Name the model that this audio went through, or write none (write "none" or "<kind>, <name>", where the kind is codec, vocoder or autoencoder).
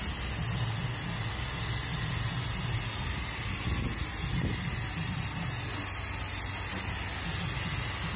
none